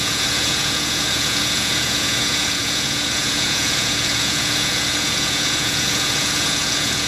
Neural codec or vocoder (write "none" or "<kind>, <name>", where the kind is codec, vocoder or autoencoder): vocoder, Vocos